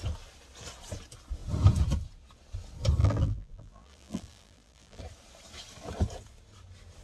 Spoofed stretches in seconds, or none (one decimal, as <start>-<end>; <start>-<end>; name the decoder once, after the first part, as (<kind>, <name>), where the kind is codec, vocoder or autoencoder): 3.0-5.0 (vocoder, BigVGAN v2)